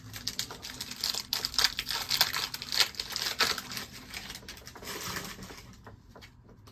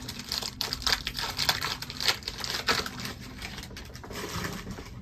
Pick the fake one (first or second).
second